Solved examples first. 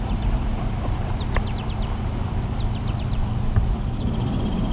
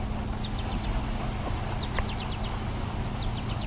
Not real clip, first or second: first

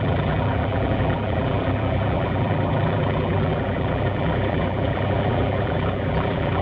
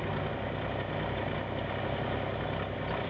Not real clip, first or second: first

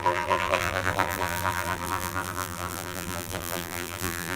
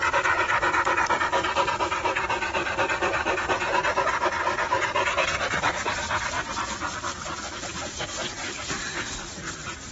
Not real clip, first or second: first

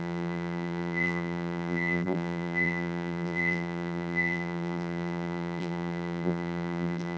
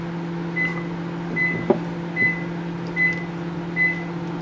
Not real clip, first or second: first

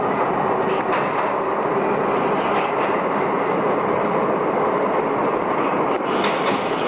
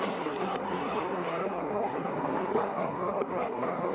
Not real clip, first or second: second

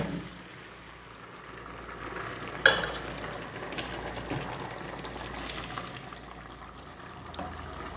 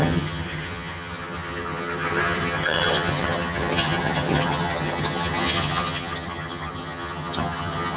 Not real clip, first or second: second